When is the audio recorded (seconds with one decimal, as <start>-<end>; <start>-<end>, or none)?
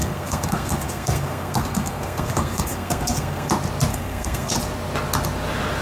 3.5-3.9; 4.5-5.8